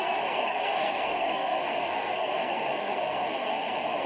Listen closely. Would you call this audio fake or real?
fake